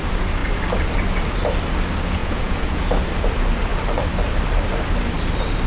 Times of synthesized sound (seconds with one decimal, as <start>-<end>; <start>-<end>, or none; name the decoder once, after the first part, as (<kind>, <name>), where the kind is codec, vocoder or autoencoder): 2.2-2.8 (vocoder, Vocos)

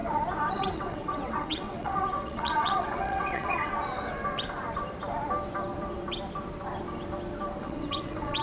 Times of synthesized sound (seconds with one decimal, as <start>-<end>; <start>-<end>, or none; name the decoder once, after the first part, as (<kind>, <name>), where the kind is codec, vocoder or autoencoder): 0.5-3.7 (vocoder, WaveNeXt); 7.6-8.4

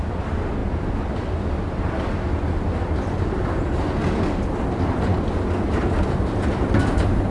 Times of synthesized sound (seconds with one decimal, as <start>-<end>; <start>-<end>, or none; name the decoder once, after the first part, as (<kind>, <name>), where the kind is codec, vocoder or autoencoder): none

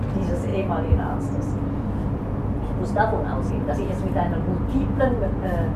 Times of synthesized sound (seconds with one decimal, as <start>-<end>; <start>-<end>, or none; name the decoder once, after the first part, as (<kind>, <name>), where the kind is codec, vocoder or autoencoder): none

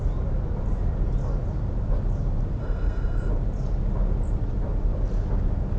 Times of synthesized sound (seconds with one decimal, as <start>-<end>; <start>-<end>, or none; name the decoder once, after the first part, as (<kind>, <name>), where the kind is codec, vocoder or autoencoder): 2.6-3.3 (codec, SNAC)

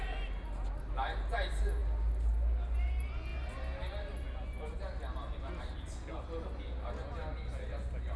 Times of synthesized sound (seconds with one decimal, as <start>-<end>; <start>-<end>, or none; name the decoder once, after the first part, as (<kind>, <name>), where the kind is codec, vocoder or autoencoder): none

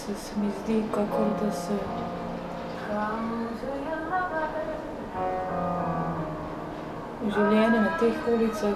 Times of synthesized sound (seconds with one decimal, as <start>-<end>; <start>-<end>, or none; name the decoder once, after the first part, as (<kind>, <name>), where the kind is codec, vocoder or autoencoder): none